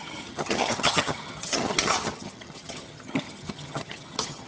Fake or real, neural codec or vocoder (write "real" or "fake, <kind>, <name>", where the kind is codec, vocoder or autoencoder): fake, vocoder, HiFi-GAN